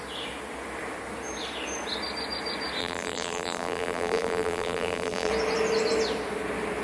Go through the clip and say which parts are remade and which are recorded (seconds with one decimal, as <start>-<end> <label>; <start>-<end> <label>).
0.0-2.8 recorded; 2.8-5.3 remade; 5.3-6.8 recorded